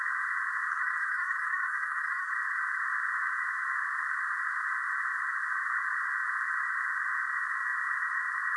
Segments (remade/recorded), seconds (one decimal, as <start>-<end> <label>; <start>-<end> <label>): 0.0-0.7 recorded; 0.7-2.3 remade; 2.3-8.6 recorded